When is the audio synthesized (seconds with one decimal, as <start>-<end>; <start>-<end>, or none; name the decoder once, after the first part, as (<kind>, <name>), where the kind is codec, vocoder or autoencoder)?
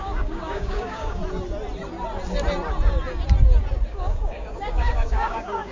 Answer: 0.0-1.2 (codec, DAC); 3.9-5.7